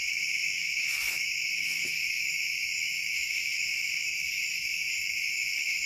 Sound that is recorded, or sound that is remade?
remade